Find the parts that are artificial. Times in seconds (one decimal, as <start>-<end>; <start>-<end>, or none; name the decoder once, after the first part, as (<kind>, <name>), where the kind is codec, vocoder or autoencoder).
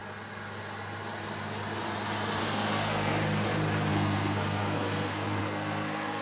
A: 2.4-3.1 (codec, SNAC); 3.9-6.2